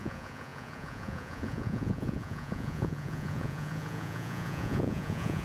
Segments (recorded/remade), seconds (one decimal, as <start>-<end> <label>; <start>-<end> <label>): 0.0-5.4 remade